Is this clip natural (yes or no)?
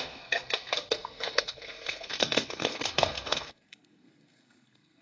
no